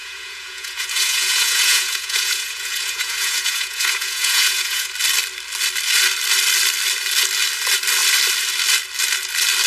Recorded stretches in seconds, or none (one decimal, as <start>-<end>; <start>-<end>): 4.9-9.7